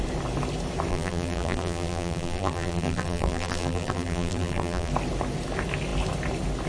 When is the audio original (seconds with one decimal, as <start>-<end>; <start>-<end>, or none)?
0.0-0.9; 4.9-6.7